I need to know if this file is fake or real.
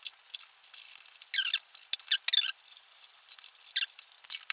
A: real